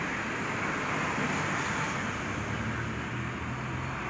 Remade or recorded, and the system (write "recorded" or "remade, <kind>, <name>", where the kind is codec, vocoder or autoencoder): recorded